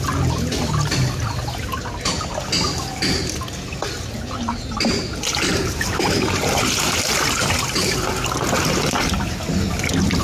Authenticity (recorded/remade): recorded